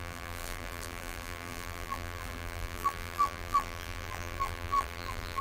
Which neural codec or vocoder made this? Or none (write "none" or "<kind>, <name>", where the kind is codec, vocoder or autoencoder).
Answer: vocoder, BigVGAN v2